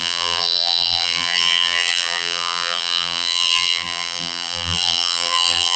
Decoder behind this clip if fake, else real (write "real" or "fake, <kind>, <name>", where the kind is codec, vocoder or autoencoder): fake, vocoder, BigVGAN v2